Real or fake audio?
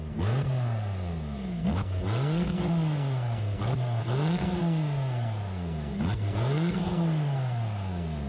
fake